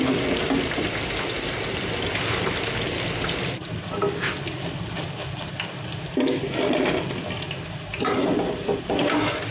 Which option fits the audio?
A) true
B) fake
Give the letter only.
A